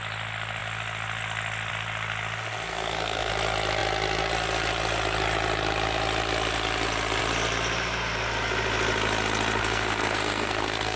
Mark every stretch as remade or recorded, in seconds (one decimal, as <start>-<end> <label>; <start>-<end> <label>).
0.0-2.7 recorded; 2.7-3.3 remade; 3.3-9.6 recorded; 9.6-11.0 remade